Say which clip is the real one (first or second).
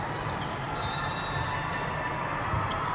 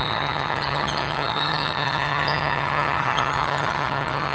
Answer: first